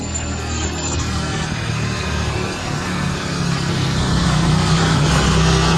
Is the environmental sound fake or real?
fake